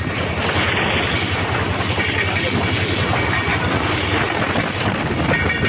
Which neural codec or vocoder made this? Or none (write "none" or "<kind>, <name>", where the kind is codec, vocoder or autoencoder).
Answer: none